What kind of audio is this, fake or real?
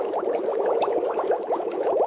fake